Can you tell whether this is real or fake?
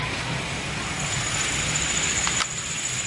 real